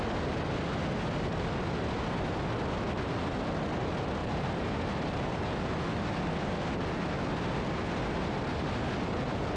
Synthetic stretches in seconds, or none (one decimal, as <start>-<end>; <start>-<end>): 4.2-5.7